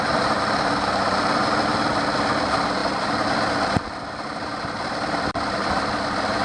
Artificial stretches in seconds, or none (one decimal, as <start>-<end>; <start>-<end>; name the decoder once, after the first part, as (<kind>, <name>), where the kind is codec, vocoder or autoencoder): none